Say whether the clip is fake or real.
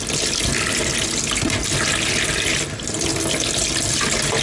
real